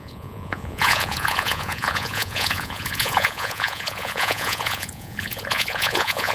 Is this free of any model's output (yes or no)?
no